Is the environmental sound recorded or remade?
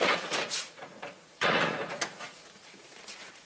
remade